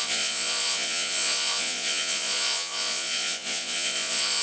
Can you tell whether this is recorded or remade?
remade